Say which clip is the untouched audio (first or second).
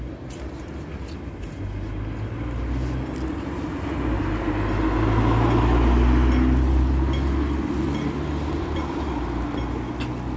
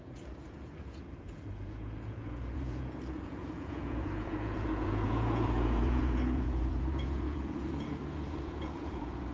first